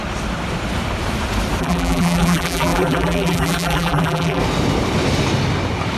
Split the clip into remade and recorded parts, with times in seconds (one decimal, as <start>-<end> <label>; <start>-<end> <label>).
0.0-1.6 recorded; 1.6-4.4 remade; 4.4-6.0 recorded